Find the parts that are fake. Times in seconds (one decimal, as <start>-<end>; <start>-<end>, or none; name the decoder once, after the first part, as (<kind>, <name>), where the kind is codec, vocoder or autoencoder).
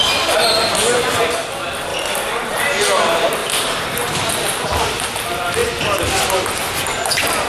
none